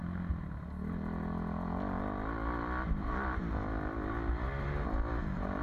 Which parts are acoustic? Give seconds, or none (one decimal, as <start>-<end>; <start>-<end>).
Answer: 0.0-5.6